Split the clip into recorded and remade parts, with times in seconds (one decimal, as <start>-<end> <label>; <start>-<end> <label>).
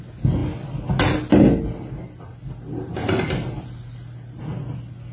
0.0-5.1 recorded